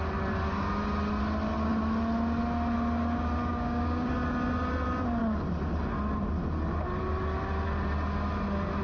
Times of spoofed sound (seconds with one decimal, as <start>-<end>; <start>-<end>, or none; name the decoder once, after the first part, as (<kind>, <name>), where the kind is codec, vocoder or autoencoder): 3.4-4.1 (codec, DAC)